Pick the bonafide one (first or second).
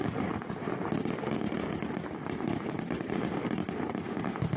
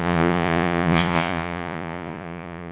first